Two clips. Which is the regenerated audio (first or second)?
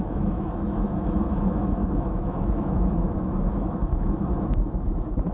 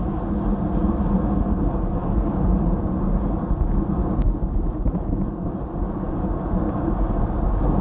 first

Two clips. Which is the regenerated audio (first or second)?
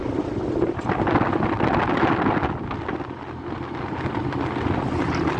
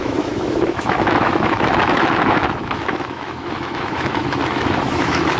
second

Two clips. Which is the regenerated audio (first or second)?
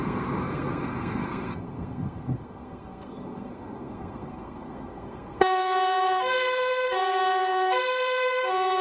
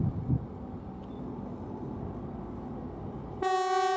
first